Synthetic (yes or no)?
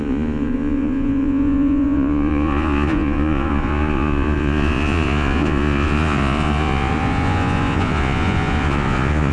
yes